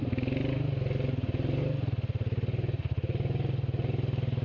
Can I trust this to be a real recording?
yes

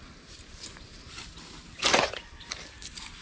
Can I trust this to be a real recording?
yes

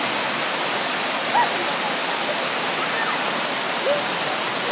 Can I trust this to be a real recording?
yes